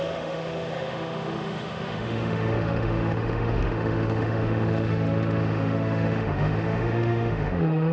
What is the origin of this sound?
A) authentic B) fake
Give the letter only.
B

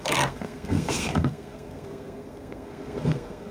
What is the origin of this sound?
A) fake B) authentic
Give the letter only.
A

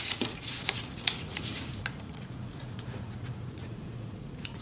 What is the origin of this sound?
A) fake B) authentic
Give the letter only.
A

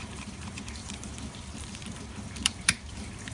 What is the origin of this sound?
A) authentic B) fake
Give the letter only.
B